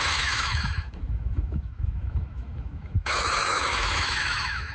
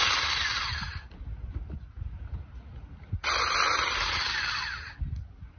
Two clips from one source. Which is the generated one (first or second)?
first